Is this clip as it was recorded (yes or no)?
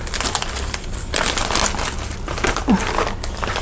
yes